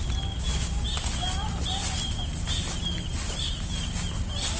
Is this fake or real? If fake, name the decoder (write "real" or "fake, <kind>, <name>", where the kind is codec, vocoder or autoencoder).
real